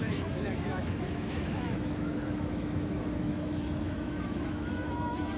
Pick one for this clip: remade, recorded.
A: remade